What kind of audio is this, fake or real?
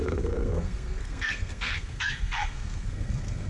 fake